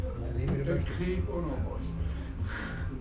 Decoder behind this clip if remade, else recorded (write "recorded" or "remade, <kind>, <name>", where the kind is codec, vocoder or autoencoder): recorded